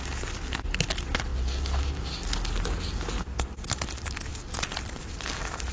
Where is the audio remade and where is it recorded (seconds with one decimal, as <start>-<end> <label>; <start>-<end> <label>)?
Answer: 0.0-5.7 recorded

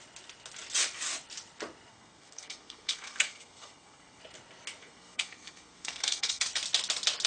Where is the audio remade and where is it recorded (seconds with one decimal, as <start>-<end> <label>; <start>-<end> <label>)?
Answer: 0.0-1.9 recorded; 1.9-4.2 remade; 4.2-4.8 recorded; 4.8-6.5 remade; 6.5-7.3 recorded

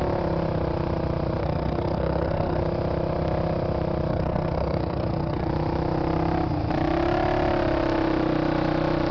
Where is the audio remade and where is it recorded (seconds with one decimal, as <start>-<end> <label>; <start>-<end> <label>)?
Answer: 0.0-1.4 recorded; 1.4-2.6 remade; 2.6-4.1 recorded; 4.1-5.5 remade; 5.5-9.1 recorded